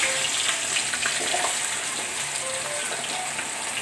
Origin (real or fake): real